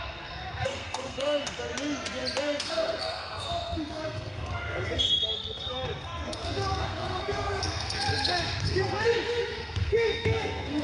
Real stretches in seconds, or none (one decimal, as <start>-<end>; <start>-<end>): 1.7-2.4